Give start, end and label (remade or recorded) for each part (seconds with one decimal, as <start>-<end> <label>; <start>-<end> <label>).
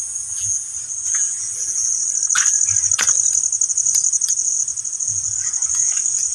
0.0-1.8 remade; 1.8-3.7 recorded; 3.7-6.3 remade